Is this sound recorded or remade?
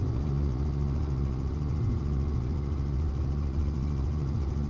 remade